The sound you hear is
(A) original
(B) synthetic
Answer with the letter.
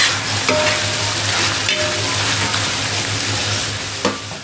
A